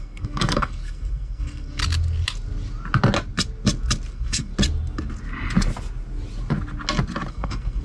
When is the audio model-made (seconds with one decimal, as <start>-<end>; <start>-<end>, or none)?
0.0-1.8; 4.1-4.5; 7.3-7.8